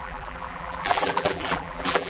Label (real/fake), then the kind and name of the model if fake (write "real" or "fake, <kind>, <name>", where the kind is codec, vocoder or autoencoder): fake, vocoder, BigVGAN v2